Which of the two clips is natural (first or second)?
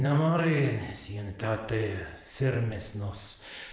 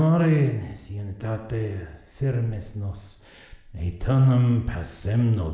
second